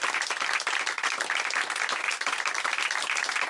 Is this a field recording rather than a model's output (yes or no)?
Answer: yes